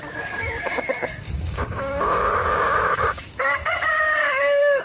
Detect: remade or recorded remade